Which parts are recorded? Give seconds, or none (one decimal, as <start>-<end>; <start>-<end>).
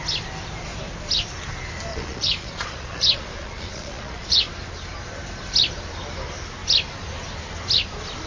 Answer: 0.0-1.9; 4.5-8.3